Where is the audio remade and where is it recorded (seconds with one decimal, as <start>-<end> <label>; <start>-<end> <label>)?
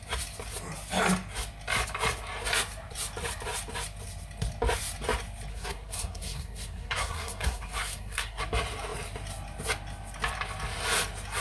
0.0-5.5 recorded; 5.5-8.4 remade; 8.4-11.4 recorded